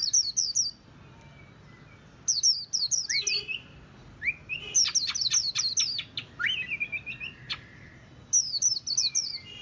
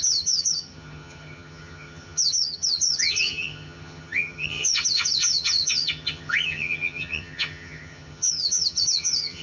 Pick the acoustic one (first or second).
first